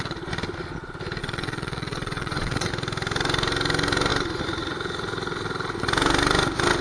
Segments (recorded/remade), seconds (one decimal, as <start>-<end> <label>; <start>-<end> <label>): 0.0-1.2 recorded; 1.2-2.7 remade; 2.7-6.8 recorded